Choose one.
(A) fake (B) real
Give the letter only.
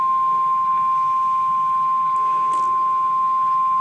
B